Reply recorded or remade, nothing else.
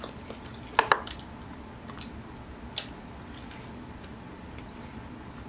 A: recorded